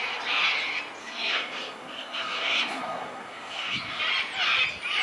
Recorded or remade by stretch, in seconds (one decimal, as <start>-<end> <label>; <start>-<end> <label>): 0.0-1.0 recorded; 1.0-4.0 remade; 4.0-5.0 recorded